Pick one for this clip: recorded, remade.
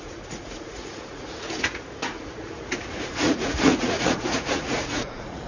remade